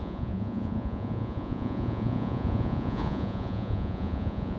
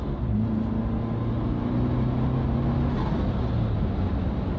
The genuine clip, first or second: second